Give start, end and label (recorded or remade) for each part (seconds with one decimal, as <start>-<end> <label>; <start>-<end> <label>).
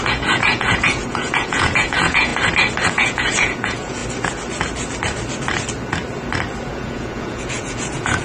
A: 0.0-2.3 remade; 2.3-2.9 recorded; 2.9-4.0 remade; 4.0-6.7 recorded; 6.7-8.2 remade